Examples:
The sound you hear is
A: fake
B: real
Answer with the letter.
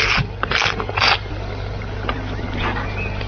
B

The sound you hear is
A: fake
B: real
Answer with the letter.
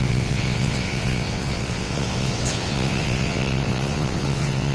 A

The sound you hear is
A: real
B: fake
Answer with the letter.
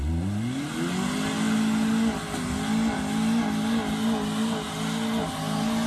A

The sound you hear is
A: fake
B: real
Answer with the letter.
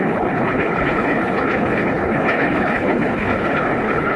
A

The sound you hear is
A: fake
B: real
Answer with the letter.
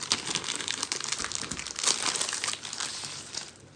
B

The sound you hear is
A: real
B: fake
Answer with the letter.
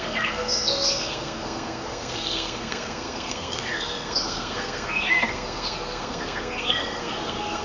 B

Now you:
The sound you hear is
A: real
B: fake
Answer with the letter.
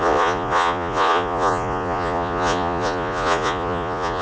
B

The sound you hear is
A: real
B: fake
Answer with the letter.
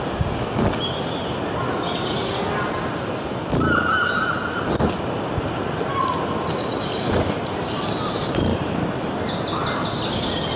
A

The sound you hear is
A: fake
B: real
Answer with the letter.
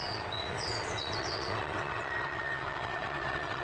A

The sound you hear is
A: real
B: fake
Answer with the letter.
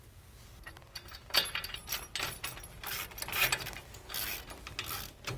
A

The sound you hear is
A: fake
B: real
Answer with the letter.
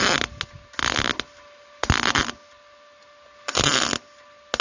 B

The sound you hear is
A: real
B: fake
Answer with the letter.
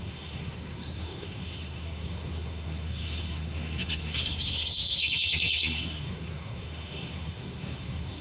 B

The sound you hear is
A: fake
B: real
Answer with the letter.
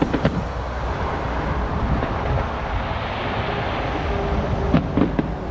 B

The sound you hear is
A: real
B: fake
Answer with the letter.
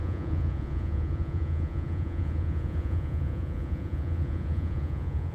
B